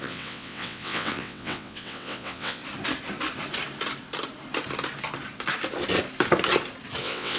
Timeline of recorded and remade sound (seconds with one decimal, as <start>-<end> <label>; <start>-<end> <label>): 0.0-2.6 remade; 2.6-7.0 recorded; 7.0-7.4 remade

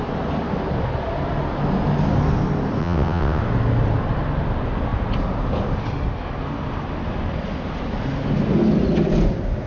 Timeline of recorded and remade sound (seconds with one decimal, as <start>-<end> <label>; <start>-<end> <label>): 0.0-2.8 recorded; 2.8-3.4 remade; 3.4-9.7 recorded

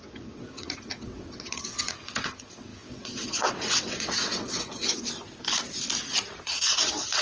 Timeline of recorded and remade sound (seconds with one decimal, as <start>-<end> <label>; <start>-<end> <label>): 0.0-4.8 remade; 4.8-6.4 recorded; 6.4-7.2 remade

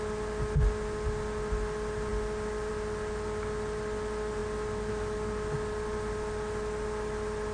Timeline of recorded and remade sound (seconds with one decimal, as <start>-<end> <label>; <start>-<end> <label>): 0.0-7.5 recorded

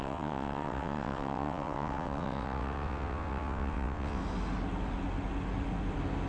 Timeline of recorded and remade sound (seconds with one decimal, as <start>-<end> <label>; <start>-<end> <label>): 0.0-4.2 remade; 4.2-6.3 recorded

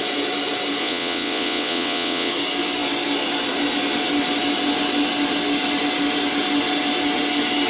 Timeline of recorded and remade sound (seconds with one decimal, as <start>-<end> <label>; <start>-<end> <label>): 0.0-0.8 recorded; 0.8-2.3 remade; 2.3-7.7 recorded

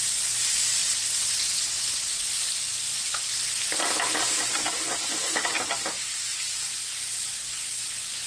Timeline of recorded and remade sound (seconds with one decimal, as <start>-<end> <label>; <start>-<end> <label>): 0.0-0.8 recorded; 0.8-2.3 remade; 2.3-8.3 recorded

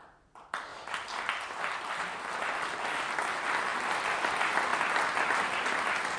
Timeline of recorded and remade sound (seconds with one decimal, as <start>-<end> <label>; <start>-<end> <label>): 0.0-6.2 recorded